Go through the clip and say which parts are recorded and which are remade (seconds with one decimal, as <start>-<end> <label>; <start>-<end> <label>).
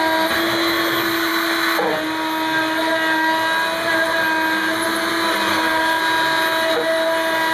0.0-5.5 recorded; 5.5-6.0 remade; 6.0-7.5 recorded